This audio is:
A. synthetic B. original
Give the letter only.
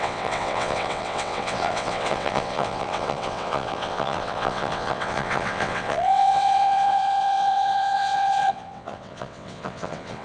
A